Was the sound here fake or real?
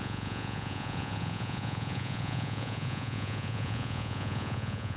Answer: fake